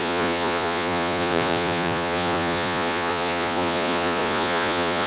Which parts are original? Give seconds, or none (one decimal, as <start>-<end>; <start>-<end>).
none

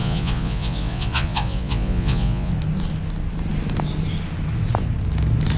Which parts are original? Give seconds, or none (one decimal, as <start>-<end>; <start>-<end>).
2.5-5.6

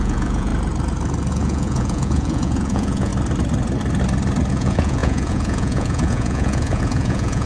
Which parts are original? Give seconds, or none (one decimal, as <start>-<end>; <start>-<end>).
0.5-1.3; 3.1-4.5

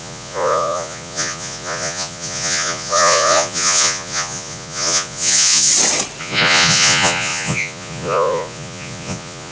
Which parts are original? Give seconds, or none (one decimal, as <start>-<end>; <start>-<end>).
5.7-6.2